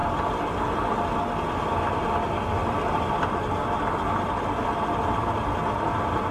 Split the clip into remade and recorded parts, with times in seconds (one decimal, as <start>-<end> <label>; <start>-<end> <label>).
0.0-0.6 remade; 0.6-2.6 recorded; 2.6-3.1 remade; 3.1-6.3 recorded